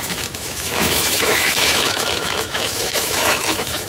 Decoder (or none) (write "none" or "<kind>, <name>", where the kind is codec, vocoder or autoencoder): autoencoder, DAC-VAE